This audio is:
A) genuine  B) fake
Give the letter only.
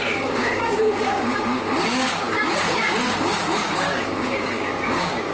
B